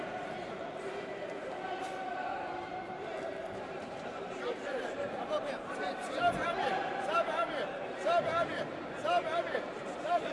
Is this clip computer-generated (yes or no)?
yes